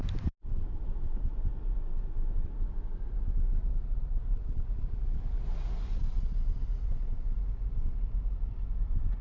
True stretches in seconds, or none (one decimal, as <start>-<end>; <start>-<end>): 0.0-3.7; 5.4-9.2